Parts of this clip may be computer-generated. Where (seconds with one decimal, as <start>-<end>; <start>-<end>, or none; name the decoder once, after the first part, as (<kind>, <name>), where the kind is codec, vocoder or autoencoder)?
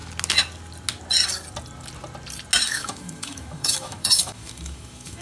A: 2.6-5.2 (autoencoder, DAC-VAE)